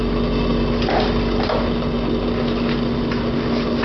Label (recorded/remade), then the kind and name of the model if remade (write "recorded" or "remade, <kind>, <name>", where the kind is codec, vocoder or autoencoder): recorded